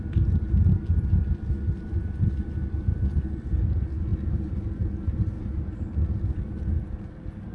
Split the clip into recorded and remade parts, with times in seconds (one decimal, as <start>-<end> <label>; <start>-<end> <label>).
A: 0.0-7.5 recorded